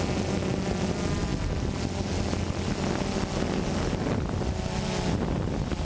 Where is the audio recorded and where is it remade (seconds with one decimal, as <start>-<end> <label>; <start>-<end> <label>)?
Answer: 0.0-5.8 recorded